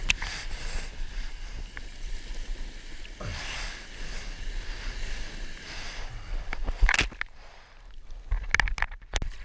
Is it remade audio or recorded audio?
recorded